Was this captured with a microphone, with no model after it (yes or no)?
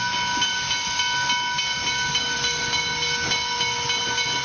yes